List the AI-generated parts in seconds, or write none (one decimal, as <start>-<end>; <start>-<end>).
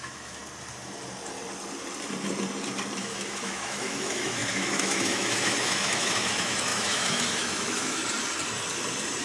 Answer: 0.0-0.4; 3.0-8.0